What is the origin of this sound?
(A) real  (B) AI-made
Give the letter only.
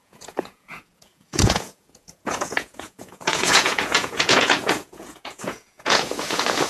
B